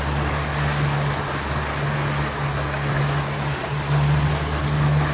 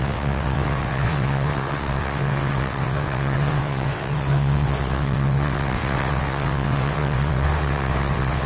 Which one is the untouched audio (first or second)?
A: first